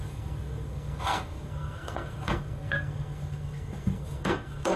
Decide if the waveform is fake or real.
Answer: fake